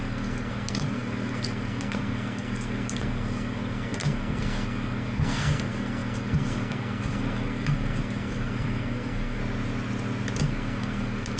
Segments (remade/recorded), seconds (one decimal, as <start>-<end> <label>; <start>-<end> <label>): 0.0-9.4 remade; 9.4-10.4 recorded; 10.4-11.4 remade